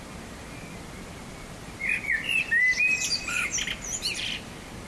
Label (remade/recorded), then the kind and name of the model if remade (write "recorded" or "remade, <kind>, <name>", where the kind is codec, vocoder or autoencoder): remade, vocoder, BigVGAN v2